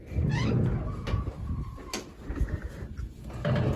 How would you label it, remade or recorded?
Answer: recorded